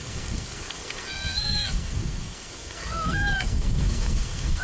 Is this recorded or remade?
remade